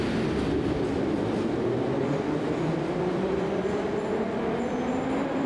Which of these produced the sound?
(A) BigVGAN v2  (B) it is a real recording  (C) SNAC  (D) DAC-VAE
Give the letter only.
B